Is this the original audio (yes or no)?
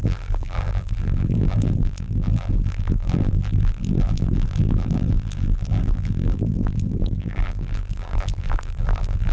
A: no